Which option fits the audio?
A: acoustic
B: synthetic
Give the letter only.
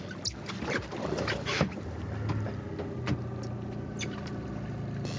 A